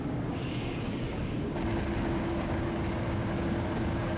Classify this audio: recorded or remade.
remade